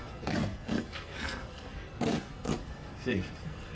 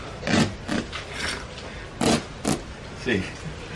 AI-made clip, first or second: first